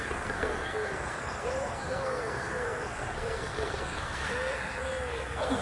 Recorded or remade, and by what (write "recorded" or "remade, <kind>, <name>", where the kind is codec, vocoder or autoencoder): remade, codec, SNAC